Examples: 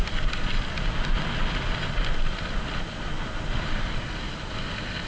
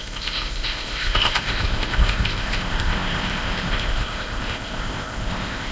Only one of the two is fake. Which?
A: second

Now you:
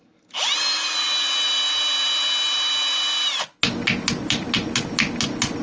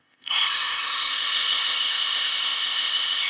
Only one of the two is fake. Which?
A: second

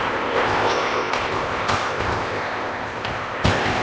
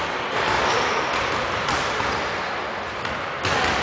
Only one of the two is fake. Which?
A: first